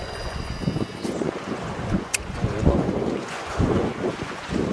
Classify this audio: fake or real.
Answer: fake